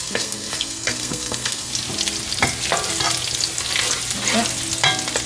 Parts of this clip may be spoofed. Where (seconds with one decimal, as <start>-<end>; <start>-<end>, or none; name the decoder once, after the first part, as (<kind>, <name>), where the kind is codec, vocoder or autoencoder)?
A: 0.0-1.7 (codec, SNAC)